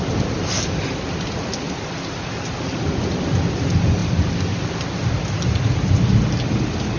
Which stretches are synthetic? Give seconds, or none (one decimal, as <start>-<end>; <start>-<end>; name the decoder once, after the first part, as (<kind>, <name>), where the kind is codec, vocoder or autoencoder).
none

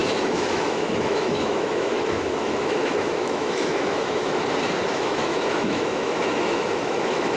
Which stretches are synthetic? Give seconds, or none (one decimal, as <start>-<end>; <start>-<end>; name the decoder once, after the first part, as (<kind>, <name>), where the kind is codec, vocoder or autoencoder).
0.0-4.4 (autoencoder, DAC-VAE); 4.9-7.4

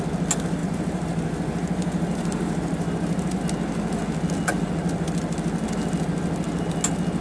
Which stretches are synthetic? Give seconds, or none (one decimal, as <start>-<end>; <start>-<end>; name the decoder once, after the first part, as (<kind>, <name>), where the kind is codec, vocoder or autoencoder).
0.6-3.4 (vocoder, BigVGAN v2)

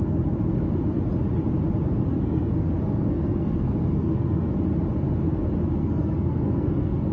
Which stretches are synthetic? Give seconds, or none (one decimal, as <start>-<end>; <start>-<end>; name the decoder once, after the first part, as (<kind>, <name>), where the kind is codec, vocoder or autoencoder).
2.1-4.5 (codec, SNAC); 5.8-7.1

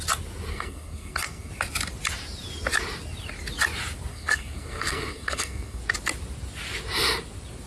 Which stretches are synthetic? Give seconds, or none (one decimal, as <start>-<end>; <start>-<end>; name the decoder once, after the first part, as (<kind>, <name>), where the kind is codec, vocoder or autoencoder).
0.5-1.5 (codec, SNAC); 4.1-5.8

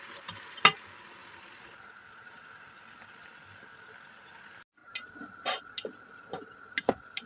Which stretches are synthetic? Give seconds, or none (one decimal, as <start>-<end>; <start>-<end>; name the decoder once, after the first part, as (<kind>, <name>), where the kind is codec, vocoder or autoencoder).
none

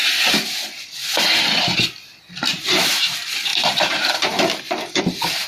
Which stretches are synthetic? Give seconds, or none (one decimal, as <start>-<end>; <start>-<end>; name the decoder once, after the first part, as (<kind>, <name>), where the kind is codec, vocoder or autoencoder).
2.5-3.1 (vocoder, BigVGAN v2); 3.5-5.0